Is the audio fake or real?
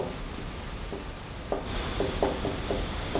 real